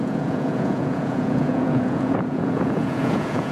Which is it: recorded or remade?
remade